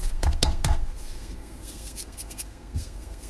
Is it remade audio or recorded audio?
remade